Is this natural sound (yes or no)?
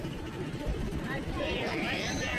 no